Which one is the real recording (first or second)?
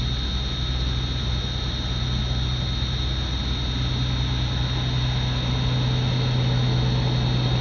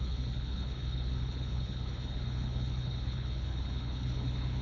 first